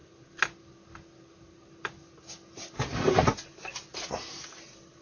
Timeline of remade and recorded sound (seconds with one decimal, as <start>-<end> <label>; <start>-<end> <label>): 0.0-5.0 recorded